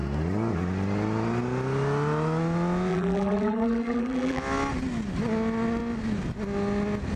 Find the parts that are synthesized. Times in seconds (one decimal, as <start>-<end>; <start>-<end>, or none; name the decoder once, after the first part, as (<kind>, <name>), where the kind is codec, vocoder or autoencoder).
2.9-4.4 (vocoder, BigVGAN v2)